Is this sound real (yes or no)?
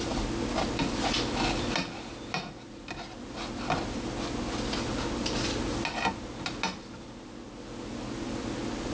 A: yes